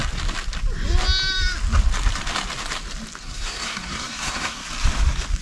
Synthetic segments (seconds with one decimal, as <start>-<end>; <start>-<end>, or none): 3.2-4.6